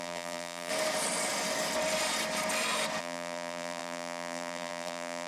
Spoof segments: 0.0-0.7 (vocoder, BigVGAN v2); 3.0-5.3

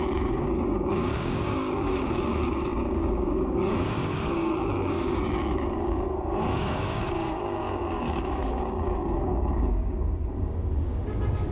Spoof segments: 0.0-11.5 (codec, DAC)